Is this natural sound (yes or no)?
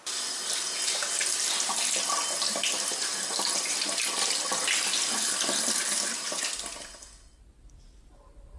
yes